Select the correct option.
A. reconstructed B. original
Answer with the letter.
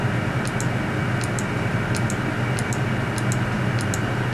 B